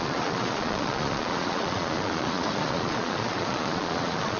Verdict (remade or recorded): remade